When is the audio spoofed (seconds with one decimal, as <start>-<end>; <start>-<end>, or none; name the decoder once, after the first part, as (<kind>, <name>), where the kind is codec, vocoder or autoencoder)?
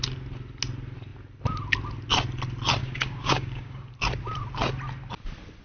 2.8-3.9 (codec, DAC)